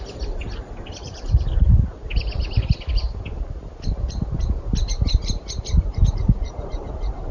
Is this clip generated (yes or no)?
no